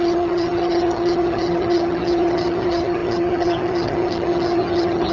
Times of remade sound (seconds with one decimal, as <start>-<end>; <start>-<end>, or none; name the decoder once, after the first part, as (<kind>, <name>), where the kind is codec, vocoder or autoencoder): 0.0-5.1 (vocoder, HiFi-GAN)